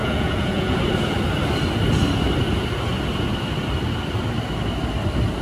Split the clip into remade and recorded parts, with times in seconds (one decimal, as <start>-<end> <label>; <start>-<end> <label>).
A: 0.0-0.8 remade; 0.8-5.4 recorded